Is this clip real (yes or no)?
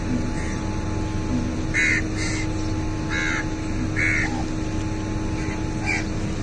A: yes